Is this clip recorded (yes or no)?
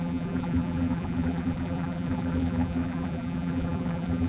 no